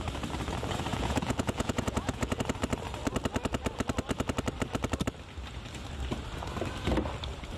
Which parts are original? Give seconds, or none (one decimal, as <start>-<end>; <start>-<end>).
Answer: 0.0-0.9; 2.4-7.6